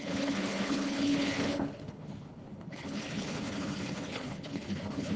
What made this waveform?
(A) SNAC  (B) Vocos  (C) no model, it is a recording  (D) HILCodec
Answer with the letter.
D